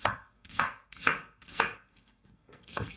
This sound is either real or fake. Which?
fake